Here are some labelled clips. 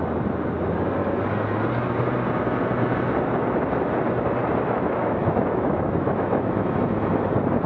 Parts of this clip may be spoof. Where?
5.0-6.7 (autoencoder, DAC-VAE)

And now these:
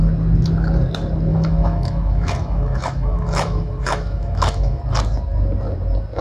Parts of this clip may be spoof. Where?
1.3-4.8 (autoencoder, DAC-VAE)

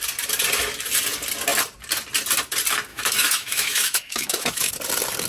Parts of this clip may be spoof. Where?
2.9-4.7 (autoencoder, DAC-VAE)

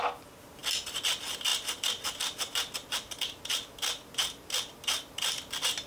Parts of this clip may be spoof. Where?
none

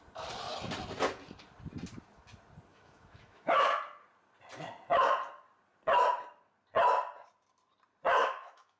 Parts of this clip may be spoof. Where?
2.7-3.8 (autoencoder, DAC-VAE); 8.2-8.8